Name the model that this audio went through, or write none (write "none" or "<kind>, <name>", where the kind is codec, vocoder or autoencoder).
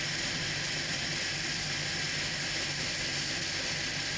none